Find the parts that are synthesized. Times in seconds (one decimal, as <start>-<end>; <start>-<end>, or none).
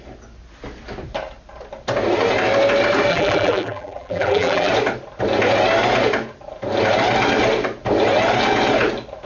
3.1-4.7